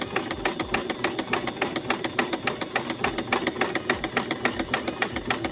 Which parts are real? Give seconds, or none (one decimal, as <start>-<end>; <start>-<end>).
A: 0.0-5.5